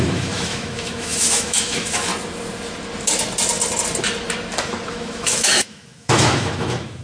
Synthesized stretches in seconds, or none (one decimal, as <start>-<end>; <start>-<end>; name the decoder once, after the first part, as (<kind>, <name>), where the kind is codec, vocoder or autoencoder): 0.0-2.1 (autoencoder, DAC-VAE); 4.9-7.0